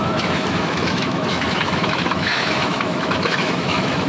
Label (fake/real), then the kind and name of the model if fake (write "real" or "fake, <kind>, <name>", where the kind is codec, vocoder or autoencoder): fake, autoencoder, DAC-VAE